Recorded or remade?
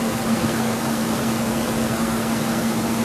remade